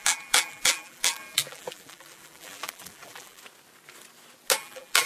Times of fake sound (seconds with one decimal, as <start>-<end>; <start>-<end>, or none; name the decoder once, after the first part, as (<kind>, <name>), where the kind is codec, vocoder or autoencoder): 0.0-3.4 (vocoder, BigVGAN v2); 4.6-5.1